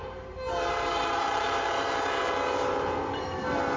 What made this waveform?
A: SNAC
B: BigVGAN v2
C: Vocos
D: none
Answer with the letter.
B